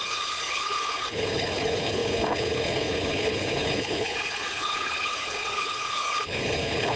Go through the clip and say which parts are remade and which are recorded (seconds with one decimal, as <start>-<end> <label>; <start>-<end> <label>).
0.0-7.0 remade